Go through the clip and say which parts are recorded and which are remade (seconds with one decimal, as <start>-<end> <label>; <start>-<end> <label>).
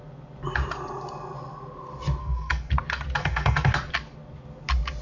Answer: 0.0-2.2 recorded; 2.2-2.7 remade; 2.7-3.2 recorded; 3.2-3.7 remade; 3.7-5.0 recorded